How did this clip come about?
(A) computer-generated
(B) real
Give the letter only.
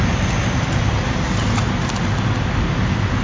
B